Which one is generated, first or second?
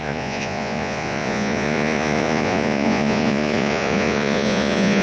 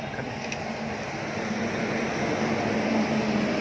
first